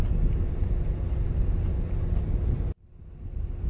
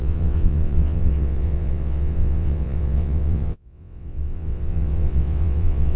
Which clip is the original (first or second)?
first